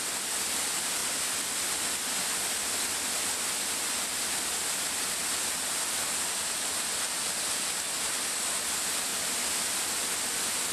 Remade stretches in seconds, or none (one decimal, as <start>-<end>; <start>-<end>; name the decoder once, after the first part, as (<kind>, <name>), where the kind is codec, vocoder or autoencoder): none